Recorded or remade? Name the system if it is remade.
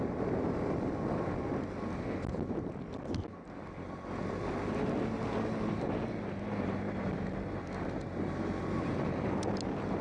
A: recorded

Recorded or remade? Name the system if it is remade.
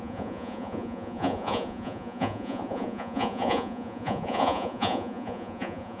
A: remade, vocoder, Vocos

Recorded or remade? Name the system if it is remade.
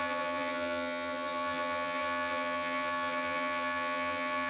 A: remade, vocoder, HiFi-GAN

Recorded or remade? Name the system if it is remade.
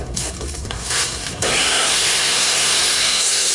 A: remade, codec, SNAC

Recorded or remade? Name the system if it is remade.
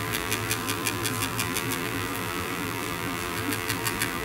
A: remade, vocoder, BigVGAN v2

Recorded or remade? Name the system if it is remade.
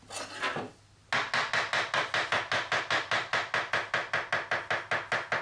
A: recorded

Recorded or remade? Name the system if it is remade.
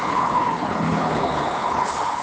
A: remade, codec, HILCodec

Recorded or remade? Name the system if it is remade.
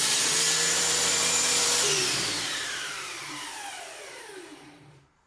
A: remade, vocoder, BigVGAN v2